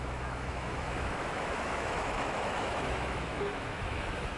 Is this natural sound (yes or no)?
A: no